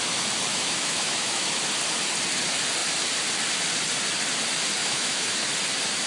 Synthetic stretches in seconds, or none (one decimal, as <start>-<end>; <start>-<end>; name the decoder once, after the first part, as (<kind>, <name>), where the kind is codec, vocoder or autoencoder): 0.5-1.6 (autoencoder, DAC-VAE); 4.8-5.5